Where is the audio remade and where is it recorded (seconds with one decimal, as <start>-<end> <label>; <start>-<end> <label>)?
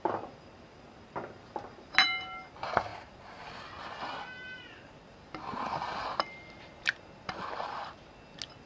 0.0-2.9 recorded; 2.9-7.8 remade; 7.8-8.7 recorded